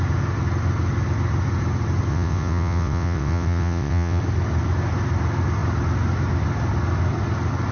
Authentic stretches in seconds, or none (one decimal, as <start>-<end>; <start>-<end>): 0.0-2.1; 4.2-7.7